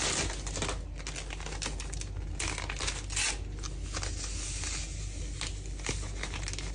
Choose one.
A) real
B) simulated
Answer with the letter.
A